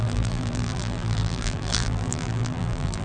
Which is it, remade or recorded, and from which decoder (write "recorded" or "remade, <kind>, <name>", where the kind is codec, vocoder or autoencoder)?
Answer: remade, vocoder, BigVGAN v2